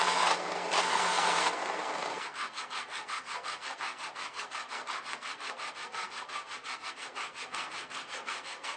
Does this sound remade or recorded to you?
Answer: remade